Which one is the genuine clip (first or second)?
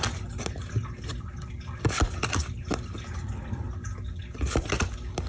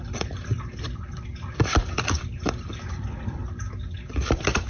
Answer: first